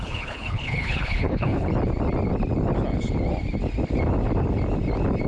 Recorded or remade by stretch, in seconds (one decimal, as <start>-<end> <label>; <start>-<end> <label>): 0.0-1.7 remade; 1.7-5.3 recorded